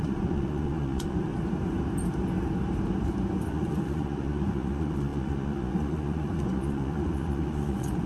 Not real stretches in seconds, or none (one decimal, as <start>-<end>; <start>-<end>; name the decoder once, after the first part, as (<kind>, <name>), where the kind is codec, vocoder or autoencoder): 0.0-1.3 (vocoder, Vocos); 3.5-8.1